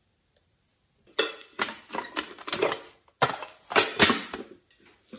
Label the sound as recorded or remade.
recorded